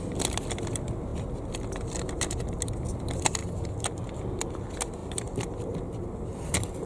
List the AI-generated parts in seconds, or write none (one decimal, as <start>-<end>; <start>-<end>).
3.4-4.2; 5.0-6.5